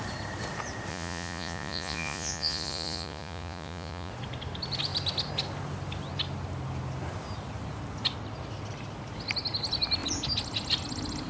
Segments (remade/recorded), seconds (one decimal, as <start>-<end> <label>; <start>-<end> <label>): 0.0-0.9 recorded; 0.9-4.1 remade; 4.1-11.3 recorded